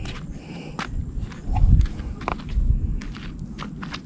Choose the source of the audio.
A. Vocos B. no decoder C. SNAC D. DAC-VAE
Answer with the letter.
B